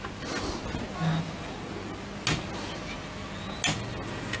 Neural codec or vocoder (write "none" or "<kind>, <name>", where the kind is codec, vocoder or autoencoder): none